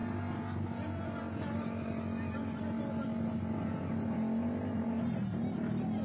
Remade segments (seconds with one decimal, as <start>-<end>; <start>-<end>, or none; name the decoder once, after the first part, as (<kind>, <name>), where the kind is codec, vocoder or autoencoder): none